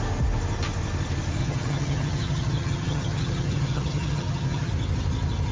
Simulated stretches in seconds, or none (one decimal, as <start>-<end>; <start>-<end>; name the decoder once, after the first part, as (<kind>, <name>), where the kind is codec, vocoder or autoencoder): 1.4-4.7 (vocoder, HiFi-GAN)